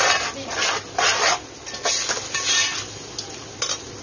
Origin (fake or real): real